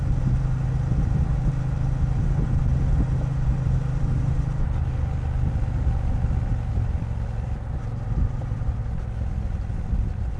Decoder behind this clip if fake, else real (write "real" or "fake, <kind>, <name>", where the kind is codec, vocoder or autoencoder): real